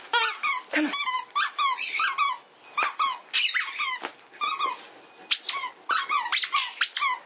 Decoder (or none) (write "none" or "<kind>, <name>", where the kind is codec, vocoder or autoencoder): none